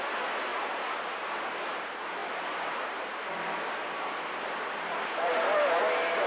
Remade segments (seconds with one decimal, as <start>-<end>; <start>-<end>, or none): none